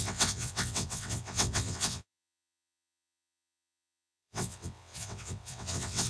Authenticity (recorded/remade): remade